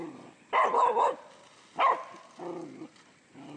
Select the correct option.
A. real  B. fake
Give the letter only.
A